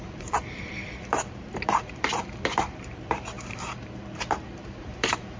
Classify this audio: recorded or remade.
remade